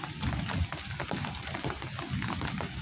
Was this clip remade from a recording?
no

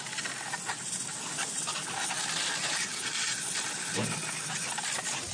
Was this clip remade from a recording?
no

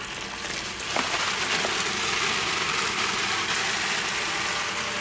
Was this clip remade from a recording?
no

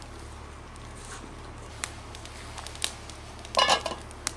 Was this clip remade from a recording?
no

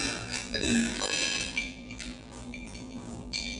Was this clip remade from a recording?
yes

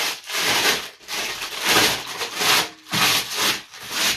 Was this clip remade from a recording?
yes